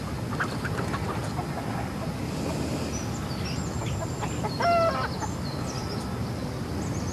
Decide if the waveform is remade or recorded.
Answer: recorded